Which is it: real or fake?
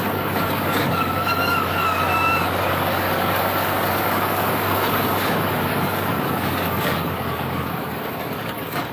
fake